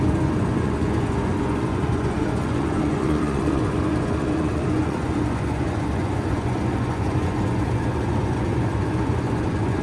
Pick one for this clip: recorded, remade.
remade